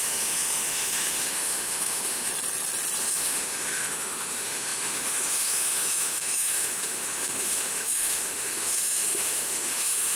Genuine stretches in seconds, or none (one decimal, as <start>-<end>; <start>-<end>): 2.3-3.0